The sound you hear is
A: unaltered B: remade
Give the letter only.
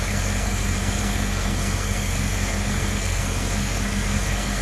B